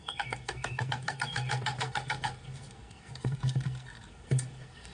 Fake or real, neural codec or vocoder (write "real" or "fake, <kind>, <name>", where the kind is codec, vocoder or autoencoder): fake, codec, SNAC